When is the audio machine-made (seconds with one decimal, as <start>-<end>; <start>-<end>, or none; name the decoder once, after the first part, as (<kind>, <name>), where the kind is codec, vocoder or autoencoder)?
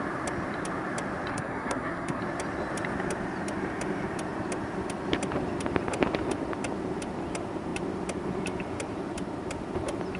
1.3-2.2 (codec, SNAC)